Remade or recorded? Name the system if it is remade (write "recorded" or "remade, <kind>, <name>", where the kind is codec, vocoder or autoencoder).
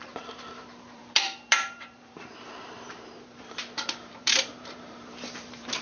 remade, vocoder, BigVGAN v2